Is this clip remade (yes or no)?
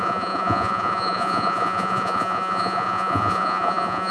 yes